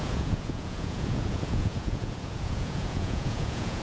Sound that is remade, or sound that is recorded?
remade